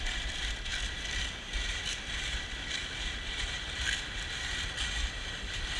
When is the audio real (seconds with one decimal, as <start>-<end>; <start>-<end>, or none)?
2.8-5.8